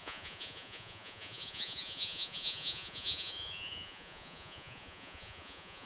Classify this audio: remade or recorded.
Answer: remade